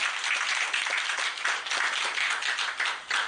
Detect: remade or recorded recorded